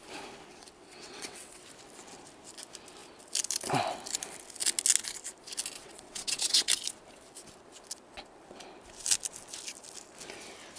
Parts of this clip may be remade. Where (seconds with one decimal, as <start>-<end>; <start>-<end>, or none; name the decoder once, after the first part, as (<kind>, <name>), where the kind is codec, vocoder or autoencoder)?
0.5-1.6 (vocoder, WaveNeXt); 5.8-6.7